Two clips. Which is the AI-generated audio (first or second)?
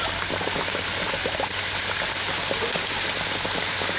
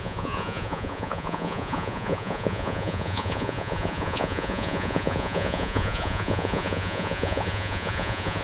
second